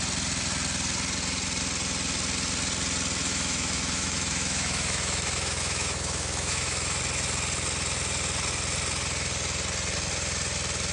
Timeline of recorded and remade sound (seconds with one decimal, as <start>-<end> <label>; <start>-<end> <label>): 0.0-3.2 recorded; 3.2-7.0 remade; 7.0-10.9 recorded